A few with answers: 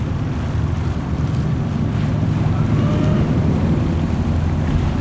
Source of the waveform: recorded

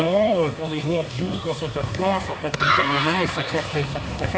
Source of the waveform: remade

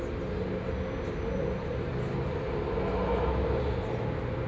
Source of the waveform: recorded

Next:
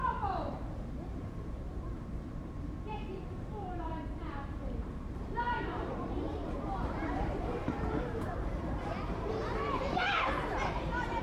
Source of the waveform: remade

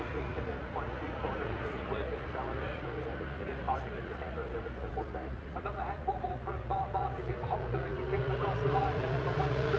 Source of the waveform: remade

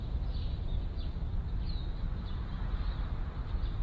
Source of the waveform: recorded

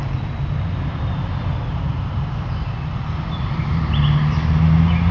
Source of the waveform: recorded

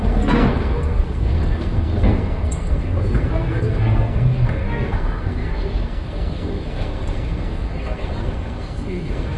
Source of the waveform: remade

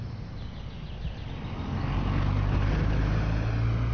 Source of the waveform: recorded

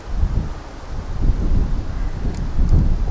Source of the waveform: recorded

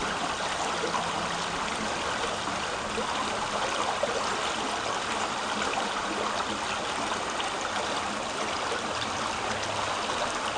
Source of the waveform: recorded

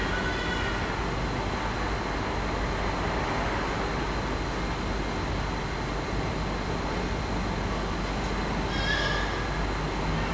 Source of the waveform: recorded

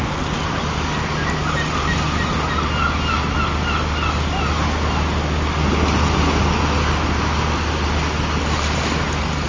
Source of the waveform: recorded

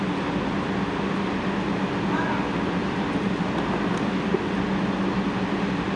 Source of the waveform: recorded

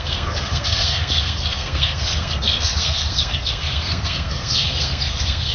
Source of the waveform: remade